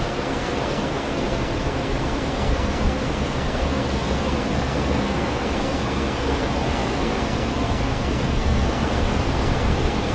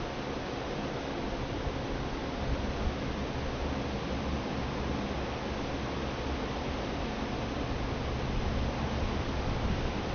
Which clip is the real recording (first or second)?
second